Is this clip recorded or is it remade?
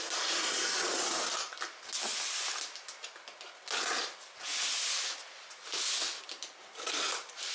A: recorded